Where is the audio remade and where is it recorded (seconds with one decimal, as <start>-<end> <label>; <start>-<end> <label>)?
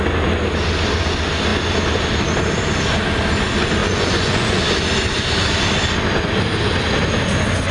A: 0.0-3.8 recorded; 3.8-4.6 remade; 4.6-7.7 recorded